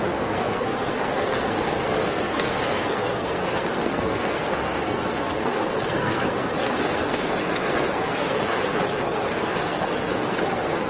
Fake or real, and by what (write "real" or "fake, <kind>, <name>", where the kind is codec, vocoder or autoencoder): fake, codec, SNAC